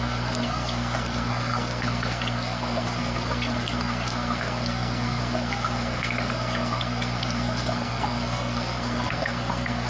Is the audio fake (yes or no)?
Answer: yes